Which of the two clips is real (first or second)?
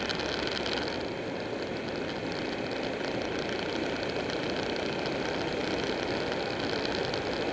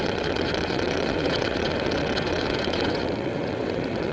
first